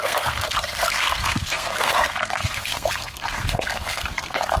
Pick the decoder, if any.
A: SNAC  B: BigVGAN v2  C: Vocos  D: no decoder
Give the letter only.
A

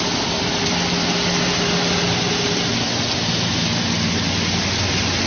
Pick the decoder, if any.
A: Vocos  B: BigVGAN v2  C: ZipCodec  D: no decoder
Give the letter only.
D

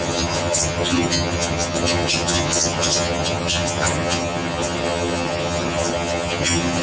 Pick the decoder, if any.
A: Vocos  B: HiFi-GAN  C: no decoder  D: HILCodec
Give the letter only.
B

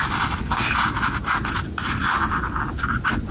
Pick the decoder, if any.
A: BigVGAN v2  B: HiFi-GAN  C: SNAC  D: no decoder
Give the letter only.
D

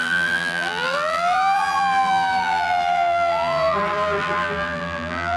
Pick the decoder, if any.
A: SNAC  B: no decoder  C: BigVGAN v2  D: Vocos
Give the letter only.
C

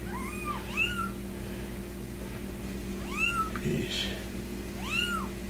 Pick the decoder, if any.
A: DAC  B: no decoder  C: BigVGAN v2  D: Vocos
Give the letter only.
B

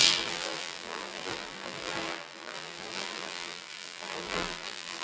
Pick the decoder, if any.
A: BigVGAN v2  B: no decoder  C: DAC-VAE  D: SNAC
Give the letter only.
A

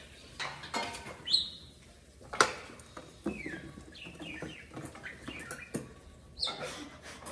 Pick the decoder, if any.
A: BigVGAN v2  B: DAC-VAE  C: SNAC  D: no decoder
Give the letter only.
D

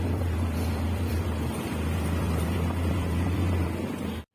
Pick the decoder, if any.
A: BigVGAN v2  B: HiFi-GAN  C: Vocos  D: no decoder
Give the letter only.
A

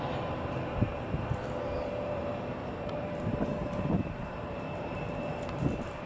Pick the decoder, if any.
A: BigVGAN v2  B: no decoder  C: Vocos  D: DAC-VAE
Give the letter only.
A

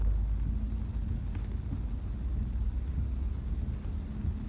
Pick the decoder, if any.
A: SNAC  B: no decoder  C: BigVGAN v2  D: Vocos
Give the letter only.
B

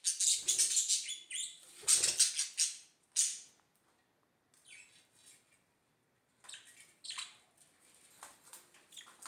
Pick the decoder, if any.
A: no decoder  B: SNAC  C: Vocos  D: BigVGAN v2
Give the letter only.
A